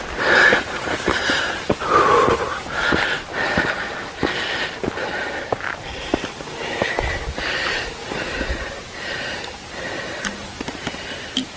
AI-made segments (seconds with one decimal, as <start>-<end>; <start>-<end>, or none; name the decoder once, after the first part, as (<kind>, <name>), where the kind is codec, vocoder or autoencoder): none